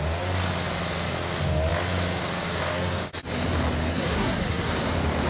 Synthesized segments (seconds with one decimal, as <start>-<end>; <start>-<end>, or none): 3.9-4.7